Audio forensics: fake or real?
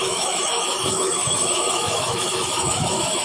fake